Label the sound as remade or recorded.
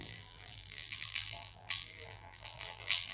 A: remade